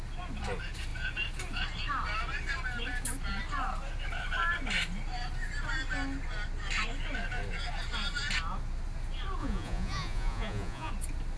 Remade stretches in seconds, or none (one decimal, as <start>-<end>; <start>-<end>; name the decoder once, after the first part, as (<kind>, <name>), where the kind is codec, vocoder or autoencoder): 9.4-10.9 (vocoder, Vocos)